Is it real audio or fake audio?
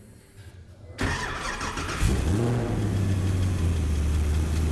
real